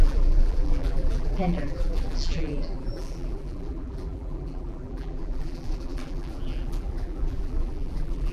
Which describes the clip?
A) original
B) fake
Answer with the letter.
B